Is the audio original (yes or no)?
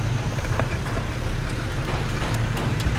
no